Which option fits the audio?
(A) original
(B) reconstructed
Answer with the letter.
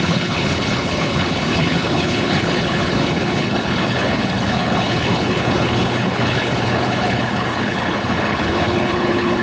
B